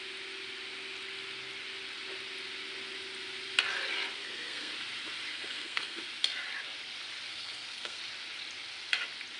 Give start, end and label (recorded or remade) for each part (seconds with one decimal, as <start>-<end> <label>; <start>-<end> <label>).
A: 0.0-4.2 recorded; 4.2-4.7 remade; 4.7-5.3 recorded; 5.3-6.0 remade; 6.0-7.3 recorded; 7.3-8.0 remade; 8.0-9.4 recorded